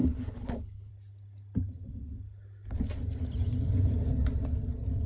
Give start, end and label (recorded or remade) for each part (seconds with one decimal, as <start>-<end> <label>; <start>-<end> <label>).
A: 0.0-0.9 remade; 0.9-5.1 recorded